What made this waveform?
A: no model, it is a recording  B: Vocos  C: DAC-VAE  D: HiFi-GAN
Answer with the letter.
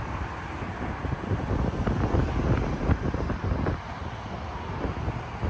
A